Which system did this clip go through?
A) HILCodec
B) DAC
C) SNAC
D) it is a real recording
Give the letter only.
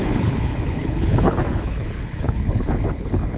A